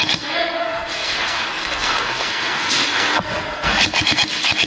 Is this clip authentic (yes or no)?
no